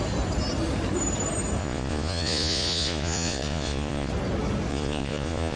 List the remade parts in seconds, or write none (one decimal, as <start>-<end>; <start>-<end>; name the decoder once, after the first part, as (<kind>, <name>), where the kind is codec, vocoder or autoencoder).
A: 1.6-4.1 (vocoder, Vocos); 4.7-5.6